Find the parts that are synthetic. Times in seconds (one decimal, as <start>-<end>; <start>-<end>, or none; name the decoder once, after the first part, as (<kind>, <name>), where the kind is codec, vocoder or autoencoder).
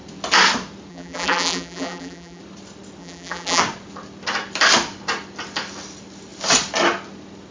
0.9-2.4 (vocoder, BigVGAN v2); 3.0-3.6